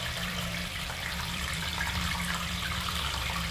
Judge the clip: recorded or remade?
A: remade